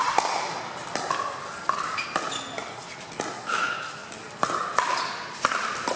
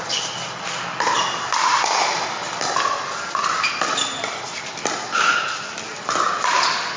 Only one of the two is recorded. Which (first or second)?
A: first